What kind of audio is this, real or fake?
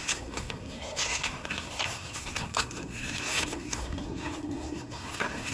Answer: fake